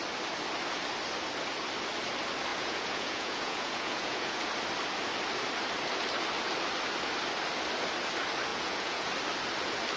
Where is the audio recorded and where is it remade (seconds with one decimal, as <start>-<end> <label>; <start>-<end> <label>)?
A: 0.0-2.5 recorded; 2.5-4.4 remade; 4.4-8.5 recorded; 8.5-9.1 remade; 9.1-10.0 recorded